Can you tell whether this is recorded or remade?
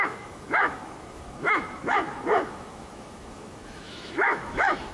remade